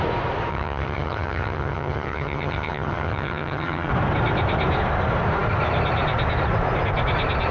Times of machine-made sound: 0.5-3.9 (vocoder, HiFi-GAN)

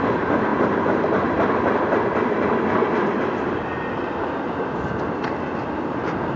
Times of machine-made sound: none